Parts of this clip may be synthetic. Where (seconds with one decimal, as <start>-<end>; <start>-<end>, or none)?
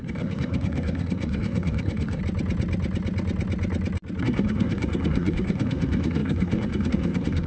0.0-2.2; 4.2-7.5